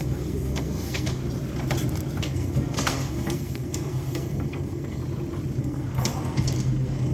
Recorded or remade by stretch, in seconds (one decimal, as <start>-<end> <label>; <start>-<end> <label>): 0.0-1.2 remade; 1.2-2.2 recorded; 2.2-5.0 remade; 5.0-5.6 recorded; 5.6-7.1 remade